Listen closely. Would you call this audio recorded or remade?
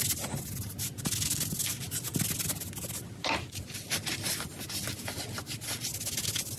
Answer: recorded